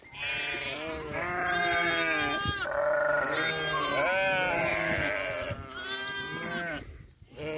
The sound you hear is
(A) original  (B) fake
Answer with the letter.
A